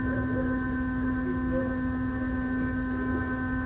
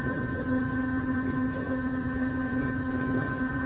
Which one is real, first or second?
first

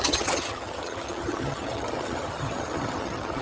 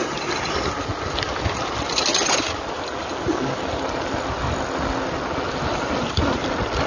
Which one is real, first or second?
second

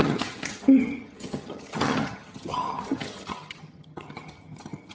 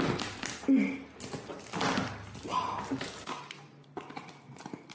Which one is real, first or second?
second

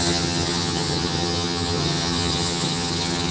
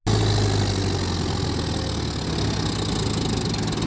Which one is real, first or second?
second